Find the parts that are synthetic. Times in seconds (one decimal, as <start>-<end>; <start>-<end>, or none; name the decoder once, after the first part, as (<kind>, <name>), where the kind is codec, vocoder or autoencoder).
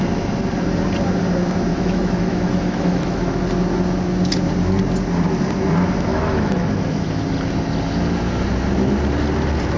1.7-3.4 (autoencoder, DAC-VAE); 6.1-6.7